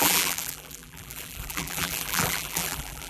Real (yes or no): no